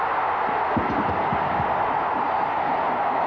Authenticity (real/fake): real